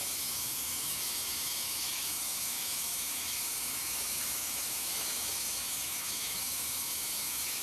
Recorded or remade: remade